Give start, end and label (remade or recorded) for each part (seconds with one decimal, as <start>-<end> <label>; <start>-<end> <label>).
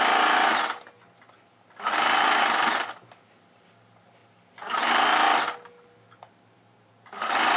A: 0.0-7.6 recorded